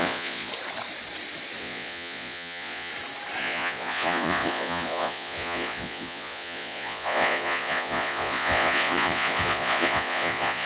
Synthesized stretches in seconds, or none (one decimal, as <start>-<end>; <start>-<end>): 0.0-0.5; 1.6-2.9; 3.4-10.7